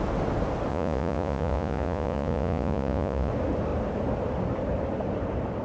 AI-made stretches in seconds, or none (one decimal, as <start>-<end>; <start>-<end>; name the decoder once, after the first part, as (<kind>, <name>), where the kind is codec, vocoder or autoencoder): 0.7-3.3 (vocoder, Vocos)